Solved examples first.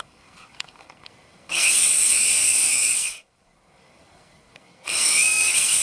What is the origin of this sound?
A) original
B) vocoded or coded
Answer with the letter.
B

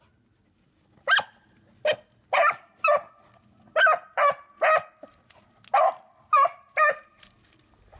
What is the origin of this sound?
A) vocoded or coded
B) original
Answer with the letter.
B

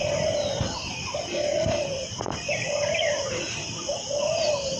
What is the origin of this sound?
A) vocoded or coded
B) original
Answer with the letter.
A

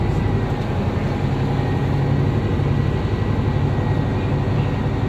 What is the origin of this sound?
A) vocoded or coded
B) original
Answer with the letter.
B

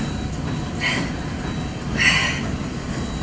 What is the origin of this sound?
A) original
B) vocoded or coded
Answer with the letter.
A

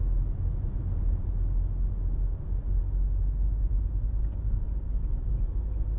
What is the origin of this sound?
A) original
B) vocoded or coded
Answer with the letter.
A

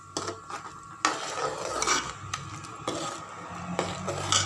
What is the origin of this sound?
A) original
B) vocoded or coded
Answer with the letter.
A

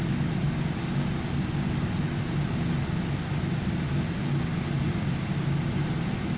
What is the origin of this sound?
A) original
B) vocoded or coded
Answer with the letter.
A